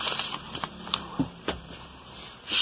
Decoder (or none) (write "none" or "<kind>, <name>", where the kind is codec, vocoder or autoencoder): none